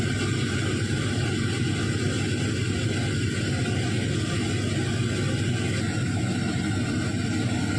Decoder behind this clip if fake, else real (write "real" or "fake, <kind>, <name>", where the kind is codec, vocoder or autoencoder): real